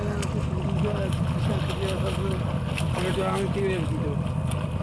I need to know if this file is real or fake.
real